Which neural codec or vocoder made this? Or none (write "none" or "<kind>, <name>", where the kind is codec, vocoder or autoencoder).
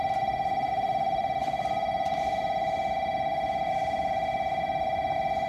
vocoder, BigVGAN v2